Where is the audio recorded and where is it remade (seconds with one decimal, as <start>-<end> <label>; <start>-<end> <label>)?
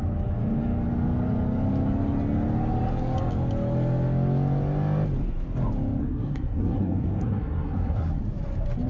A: 0.0-6.0 recorded; 6.0-8.2 remade; 8.2-8.9 recorded